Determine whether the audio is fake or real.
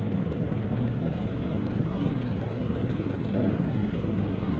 fake